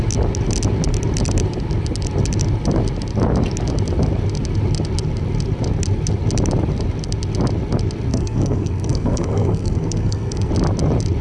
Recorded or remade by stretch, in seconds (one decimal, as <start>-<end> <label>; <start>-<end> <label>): 0.0-8.1 recorded; 8.1-10.5 remade; 10.5-11.2 recorded

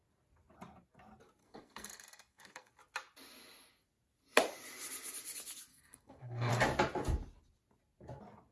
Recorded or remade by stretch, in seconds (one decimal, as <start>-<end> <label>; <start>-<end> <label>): 0.0-1.4 recorded; 1.4-2.7 remade; 2.7-5.7 recorded; 5.7-6.5 remade; 6.5-8.5 recorded

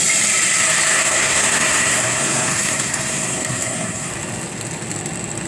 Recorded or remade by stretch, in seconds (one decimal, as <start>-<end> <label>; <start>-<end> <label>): 0.0-0.9 recorded; 0.9-4.1 remade; 4.1-5.5 recorded